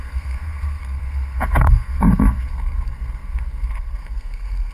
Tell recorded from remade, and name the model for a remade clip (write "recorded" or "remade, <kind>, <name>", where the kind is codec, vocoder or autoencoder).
remade, codec, SNAC